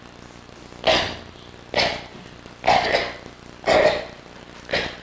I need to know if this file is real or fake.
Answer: real